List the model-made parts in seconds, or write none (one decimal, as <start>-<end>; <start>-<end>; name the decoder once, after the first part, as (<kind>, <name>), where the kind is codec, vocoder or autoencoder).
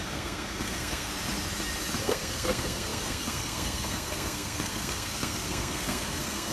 0.0-1.1 (codec, SNAC); 2.0-6.5